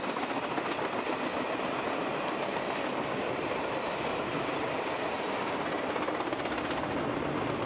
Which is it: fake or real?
real